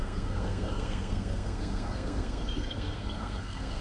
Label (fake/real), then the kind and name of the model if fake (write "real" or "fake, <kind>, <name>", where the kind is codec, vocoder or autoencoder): fake, codec, SNAC